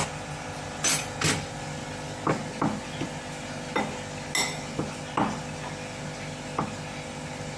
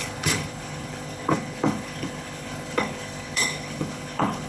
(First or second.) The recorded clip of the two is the first